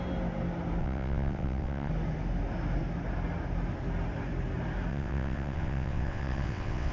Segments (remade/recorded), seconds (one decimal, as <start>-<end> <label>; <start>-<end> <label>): 0.0-0.8 recorded; 0.8-1.9 remade; 1.9-4.9 recorded; 4.9-6.9 remade